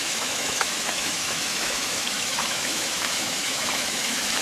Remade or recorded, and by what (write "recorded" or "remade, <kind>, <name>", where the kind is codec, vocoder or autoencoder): remade, autoencoder, DAC-VAE